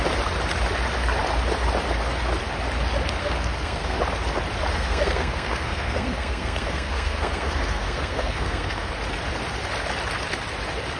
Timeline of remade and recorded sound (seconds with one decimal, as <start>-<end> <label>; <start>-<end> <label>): 0.0-3.2 recorded; 3.2-4.0 remade; 4.0-4.7 recorded; 4.7-8.9 remade; 8.9-11.0 recorded